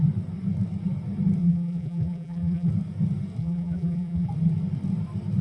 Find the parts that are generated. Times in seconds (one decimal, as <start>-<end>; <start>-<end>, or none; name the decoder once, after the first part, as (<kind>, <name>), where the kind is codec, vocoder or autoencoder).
1.4-2.7 (vocoder, BigVGAN v2); 3.4-4.3